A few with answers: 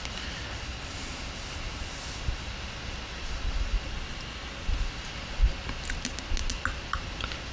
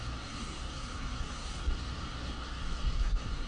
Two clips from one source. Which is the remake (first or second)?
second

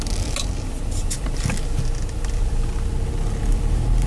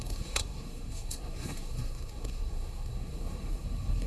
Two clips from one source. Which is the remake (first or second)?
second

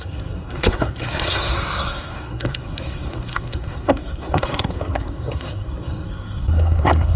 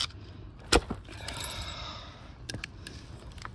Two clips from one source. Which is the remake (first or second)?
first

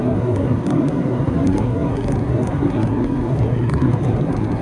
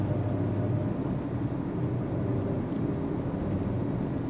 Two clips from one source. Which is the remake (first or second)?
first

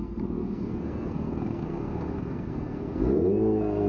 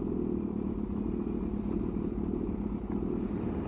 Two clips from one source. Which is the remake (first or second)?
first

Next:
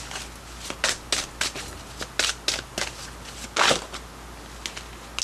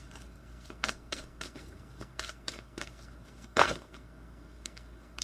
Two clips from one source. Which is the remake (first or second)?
second